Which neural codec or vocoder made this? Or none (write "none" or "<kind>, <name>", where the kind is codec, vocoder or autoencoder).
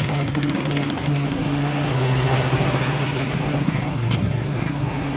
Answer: codec, SNAC